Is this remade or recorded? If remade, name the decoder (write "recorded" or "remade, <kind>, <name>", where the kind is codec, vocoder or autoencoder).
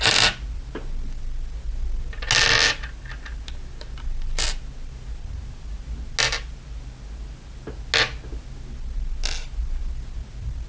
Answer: recorded